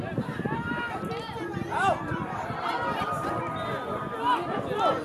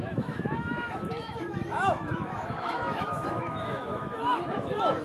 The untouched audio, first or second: first